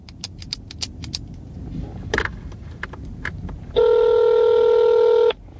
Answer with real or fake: real